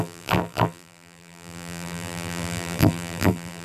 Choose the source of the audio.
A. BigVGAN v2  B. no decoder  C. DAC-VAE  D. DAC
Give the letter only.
A